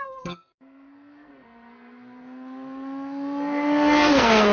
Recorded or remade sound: remade